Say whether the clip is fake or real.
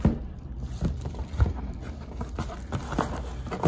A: real